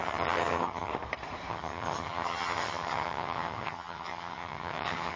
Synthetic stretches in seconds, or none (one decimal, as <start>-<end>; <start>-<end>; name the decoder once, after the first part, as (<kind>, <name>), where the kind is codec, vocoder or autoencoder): 0.0-0.9 (vocoder, HiFi-GAN); 1.5-5.2